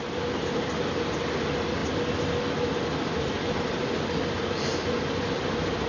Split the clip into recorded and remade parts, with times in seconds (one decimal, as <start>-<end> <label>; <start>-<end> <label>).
0.0-5.9 recorded